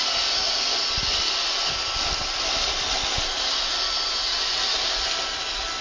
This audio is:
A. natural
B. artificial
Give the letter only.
A